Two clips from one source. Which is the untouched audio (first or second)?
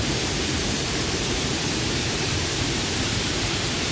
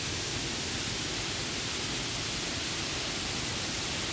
second